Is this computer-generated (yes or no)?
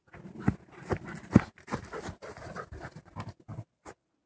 no